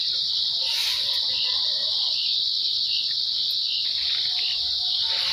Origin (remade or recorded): recorded